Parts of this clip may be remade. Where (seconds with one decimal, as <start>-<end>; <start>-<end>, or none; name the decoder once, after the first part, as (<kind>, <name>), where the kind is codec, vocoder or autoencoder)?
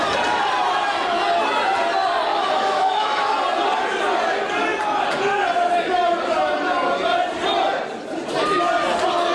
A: 2.3-3.3 (autoencoder, DAC-VAE)